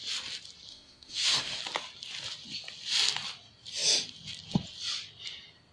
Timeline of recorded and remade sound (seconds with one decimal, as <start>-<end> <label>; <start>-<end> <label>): 0.0-0.7 recorded; 0.7-1.6 remade; 1.6-5.7 recorded